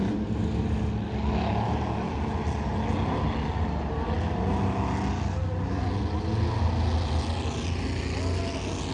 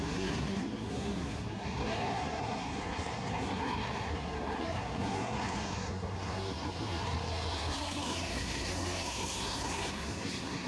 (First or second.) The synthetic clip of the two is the second